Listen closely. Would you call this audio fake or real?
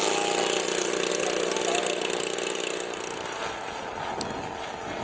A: real